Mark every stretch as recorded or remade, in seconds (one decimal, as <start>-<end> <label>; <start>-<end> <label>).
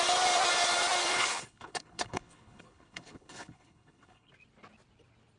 0.0-1.1 recorded; 1.1-4.3 remade; 4.3-5.4 recorded